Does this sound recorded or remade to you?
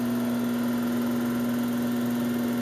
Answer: recorded